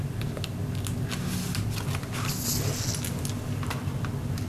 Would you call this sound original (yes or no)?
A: yes